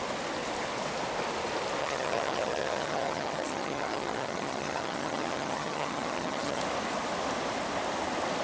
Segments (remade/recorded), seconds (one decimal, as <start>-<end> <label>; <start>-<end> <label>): 0.0-1.8 recorded; 1.8-6.6 remade; 6.6-8.4 recorded